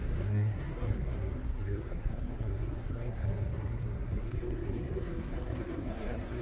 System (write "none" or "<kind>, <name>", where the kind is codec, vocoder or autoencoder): codec, SNAC